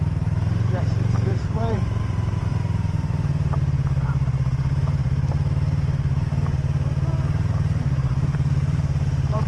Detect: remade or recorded remade